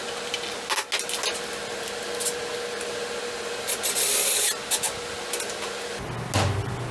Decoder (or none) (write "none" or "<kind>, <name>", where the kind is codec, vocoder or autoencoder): none